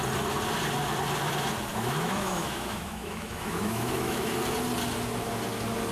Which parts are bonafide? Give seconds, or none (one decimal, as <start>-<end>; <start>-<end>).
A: 0.0-1.7; 4.3-5.9

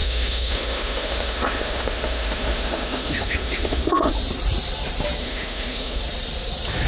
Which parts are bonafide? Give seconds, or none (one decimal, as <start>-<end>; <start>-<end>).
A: 4.1-5.2; 6.0-6.9